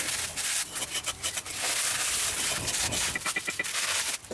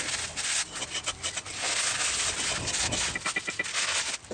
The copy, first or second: first